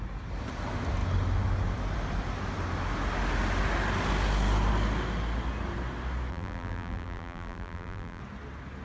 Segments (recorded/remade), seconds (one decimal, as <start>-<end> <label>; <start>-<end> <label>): 0.0-6.3 recorded; 6.3-8.2 remade; 8.2-8.8 recorded